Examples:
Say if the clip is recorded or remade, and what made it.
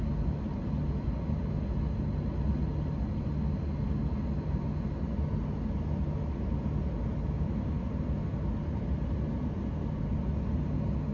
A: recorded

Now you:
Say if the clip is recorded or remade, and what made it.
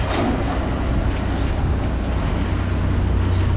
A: recorded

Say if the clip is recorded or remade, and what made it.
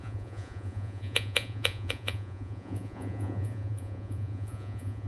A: remade, vocoder, Vocos